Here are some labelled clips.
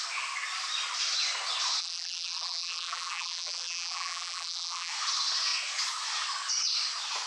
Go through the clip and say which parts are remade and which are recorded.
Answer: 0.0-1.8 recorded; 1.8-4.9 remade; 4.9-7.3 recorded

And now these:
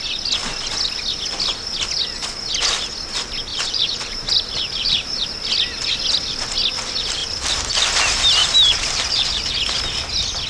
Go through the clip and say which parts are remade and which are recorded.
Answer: 0.0-3.5 recorded; 3.5-5.3 remade; 5.3-8.4 recorded; 8.4-9.5 remade; 9.5-10.5 recorded

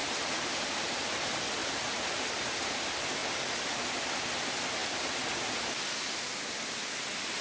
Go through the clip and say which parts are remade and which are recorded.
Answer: 0.0-3.2 remade; 3.2-3.9 recorded; 3.9-4.8 remade; 4.8-7.4 recorded

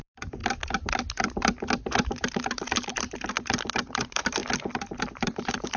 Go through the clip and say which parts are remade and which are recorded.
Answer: 0.0-0.4 remade; 0.4-3.9 recorded; 3.9-4.4 remade; 4.4-5.0 recorded; 5.0-5.8 remade

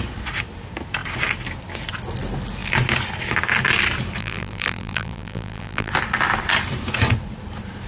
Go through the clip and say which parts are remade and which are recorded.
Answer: 0.0-4.2 recorded; 4.2-5.9 remade; 5.9-7.9 recorded